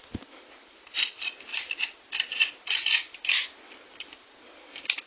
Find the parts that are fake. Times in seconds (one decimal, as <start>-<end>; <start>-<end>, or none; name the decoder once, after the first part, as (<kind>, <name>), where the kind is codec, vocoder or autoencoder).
1.5-4.6 (vocoder, BigVGAN v2)